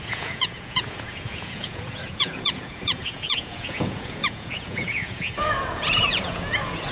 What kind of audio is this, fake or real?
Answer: fake